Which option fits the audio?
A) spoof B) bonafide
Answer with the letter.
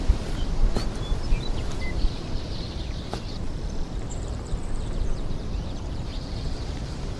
A